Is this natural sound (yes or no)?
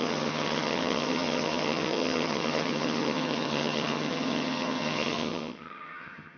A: no